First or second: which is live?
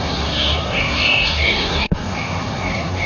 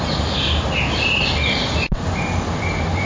second